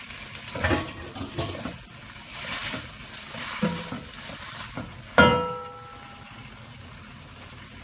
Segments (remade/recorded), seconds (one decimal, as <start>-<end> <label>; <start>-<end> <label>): 0.0-7.8 recorded